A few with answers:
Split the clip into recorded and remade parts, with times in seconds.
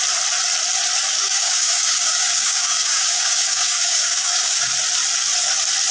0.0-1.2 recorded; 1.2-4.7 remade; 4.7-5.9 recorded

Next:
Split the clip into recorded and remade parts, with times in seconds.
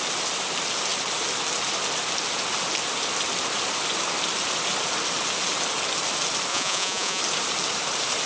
0.0-6.5 recorded; 6.5-7.2 remade; 7.2-8.3 recorded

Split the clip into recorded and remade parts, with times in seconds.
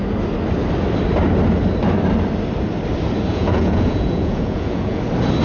0.0-3.3 recorded; 3.3-5.0 remade; 5.0-5.4 recorded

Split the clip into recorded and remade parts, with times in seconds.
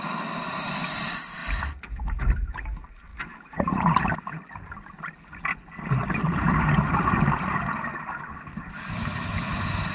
0.0-1.4 recorded; 1.4-2.2 remade; 2.2-3.1 recorded; 3.1-4.2 remade; 4.2-9.9 recorded